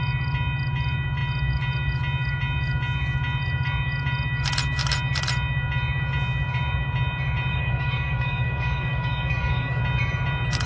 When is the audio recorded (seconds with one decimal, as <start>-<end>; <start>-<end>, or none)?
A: 0.0-7.5; 9.8-10.7